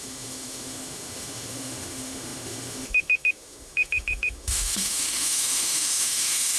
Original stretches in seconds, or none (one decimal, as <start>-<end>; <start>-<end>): none

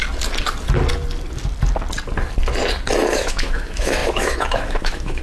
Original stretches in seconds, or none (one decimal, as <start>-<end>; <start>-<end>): 0.0-3.1

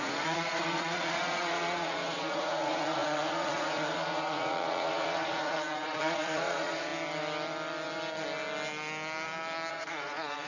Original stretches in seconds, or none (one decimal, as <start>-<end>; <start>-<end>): 6.9-9.7

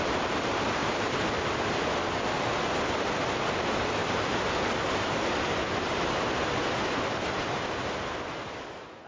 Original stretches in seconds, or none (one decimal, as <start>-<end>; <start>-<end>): 0.0-0.8; 2.0-4.0; 7.0-9.1

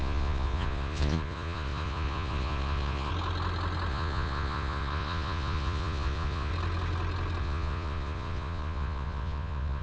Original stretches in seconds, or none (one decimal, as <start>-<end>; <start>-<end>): 3.1-3.9; 6.5-7.4

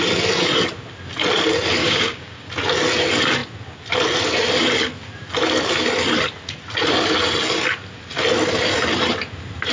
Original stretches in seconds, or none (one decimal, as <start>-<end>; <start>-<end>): 0.0-1.8; 2.5-9.7